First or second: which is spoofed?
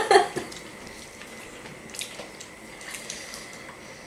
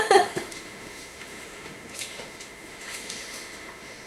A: second